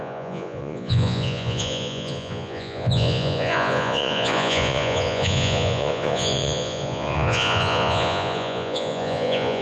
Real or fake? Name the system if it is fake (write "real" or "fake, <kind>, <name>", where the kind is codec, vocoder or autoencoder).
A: fake, vocoder, Vocos